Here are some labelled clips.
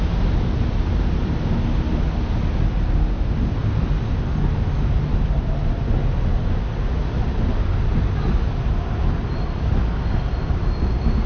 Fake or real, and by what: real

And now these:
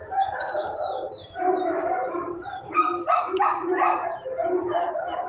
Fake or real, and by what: fake, vocoder, BigVGAN v2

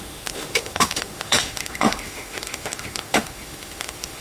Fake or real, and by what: fake, autoencoder, DAC-VAE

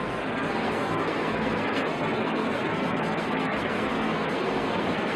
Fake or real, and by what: fake, codec, SNAC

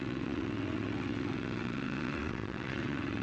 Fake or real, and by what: fake, vocoder, WaveNeXt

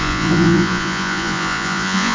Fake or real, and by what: fake, vocoder, Vocos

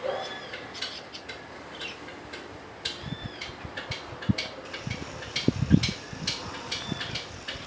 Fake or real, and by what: real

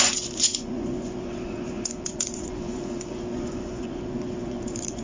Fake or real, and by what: fake, vocoder, Vocos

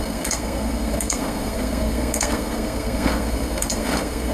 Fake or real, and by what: fake, codec, SNAC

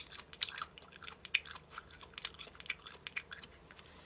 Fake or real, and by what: fake, vocoder, BigVGAN v2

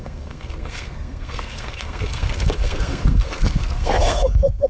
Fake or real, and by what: fake, codec, SNAC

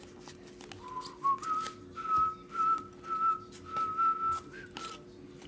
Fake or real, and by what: real